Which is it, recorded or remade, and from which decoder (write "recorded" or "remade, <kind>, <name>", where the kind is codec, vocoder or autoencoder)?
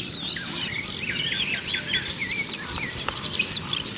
recorded